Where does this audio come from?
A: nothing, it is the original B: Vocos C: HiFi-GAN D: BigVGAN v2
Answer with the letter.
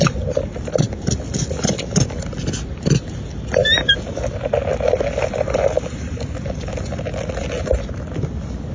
A